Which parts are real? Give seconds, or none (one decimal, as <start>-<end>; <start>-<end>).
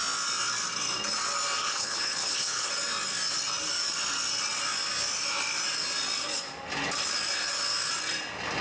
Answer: 0.0-1.6; 2.7-8.6